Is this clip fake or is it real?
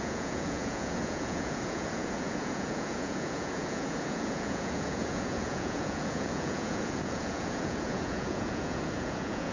fake